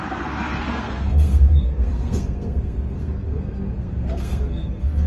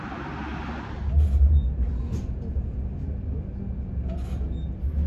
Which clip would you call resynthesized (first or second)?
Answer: first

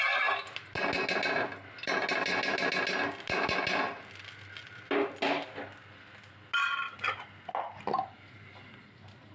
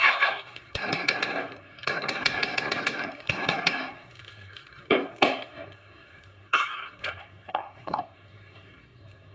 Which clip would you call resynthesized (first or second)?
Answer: second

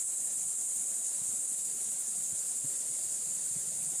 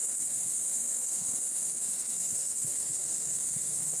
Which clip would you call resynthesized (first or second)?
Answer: second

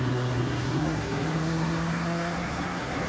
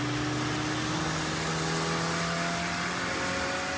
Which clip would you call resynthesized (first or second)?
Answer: first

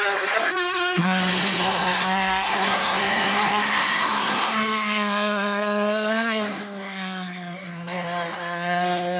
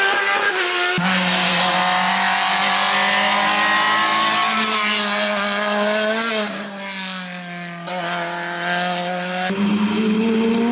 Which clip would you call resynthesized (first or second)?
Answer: first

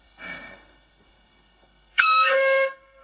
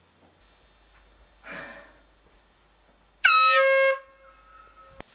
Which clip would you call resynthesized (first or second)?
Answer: first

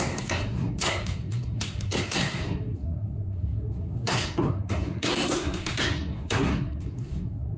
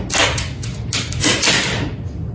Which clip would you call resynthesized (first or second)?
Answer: first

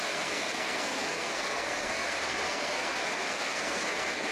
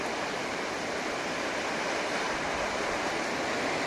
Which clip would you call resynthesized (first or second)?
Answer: first